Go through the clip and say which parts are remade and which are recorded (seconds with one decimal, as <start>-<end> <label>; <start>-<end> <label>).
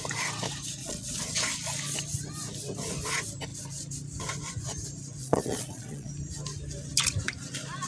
0.0-0.8 recorded; 0.8-1.3 remade; 1.3-5.2 recorded; 5.2-6.1 remade; 6.1-7.9 recorded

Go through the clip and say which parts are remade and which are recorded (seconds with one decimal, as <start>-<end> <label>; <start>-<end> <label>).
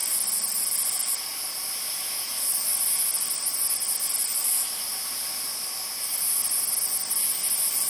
0.0-7.9 recorded